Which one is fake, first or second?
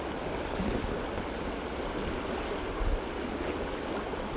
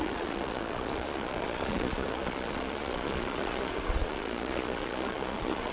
second